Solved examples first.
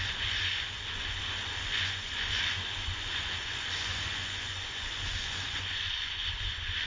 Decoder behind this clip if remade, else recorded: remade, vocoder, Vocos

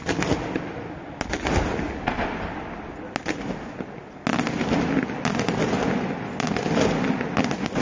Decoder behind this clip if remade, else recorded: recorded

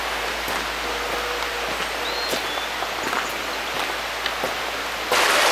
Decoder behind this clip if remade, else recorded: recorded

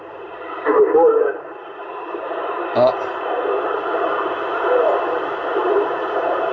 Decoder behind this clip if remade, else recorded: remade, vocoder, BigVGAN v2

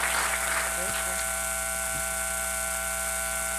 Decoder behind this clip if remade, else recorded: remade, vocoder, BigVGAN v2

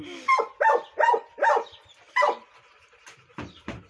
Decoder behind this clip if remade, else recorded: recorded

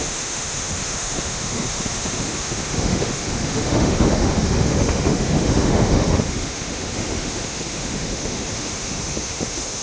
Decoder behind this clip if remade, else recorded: remade, autoencoder, DAC-VAE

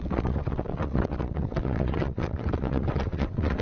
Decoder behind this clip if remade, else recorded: remade, vocoder, WaveNeXt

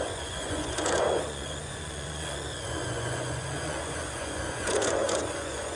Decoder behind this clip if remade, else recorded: remade, vocoder, Vocos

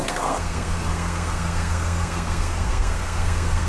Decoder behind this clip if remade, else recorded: remade, codec, SNAC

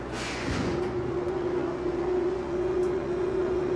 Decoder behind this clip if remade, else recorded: remade, vocoder, Vocos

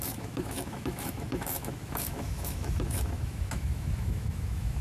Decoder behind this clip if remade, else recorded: remade, autoencoder, DAC-VAE